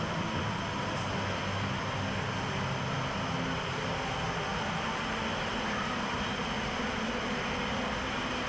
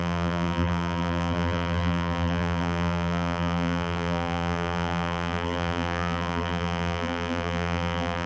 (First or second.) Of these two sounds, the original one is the first